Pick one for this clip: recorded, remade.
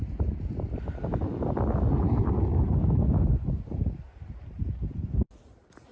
recorded